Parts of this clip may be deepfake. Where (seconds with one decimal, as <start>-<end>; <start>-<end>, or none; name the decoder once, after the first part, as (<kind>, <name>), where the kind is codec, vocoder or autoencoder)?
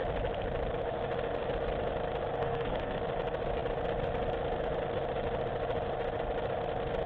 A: 2.4-3.0 (codec, SNAC)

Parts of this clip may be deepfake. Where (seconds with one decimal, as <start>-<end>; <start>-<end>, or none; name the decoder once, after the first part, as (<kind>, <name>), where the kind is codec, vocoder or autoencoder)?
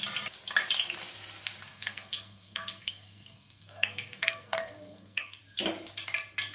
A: 1.7-5.4 (codec, SNAC)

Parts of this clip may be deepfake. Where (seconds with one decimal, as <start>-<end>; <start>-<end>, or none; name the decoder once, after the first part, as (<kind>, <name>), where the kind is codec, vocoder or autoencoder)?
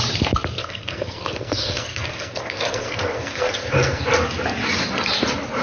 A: 0.6-4.0 (codec, SNAC)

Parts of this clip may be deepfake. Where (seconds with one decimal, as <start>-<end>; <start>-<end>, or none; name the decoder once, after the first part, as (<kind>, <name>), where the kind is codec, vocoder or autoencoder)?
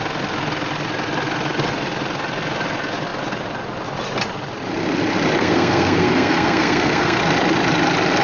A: 5.4-7.2 (codec, SNAC)